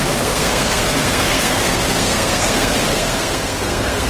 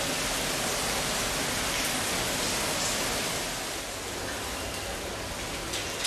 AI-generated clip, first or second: first